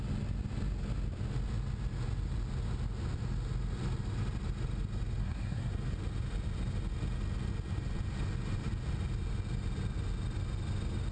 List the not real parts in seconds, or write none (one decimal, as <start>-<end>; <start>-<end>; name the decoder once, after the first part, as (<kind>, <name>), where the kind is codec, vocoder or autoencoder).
5.2-5.7 (codec, SNAC)